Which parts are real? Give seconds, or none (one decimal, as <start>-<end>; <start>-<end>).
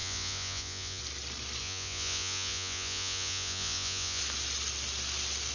1.0-1.6; 4.2-5.5